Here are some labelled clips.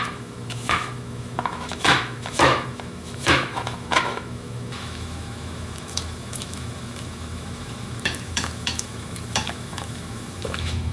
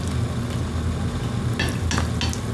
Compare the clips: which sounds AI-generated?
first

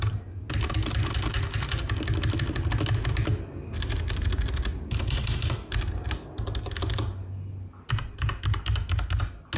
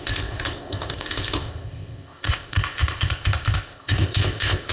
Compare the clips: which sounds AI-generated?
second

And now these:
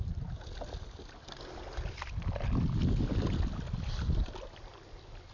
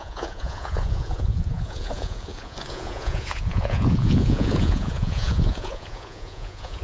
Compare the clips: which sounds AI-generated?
second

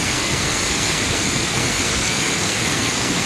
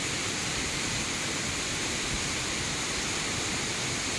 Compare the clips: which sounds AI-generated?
first